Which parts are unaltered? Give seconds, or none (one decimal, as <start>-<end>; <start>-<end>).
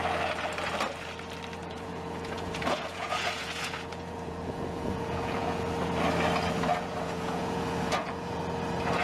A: 0.0-1.6; 5.6-6.7; 8.4-9.0